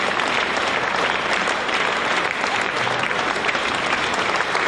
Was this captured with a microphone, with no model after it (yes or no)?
no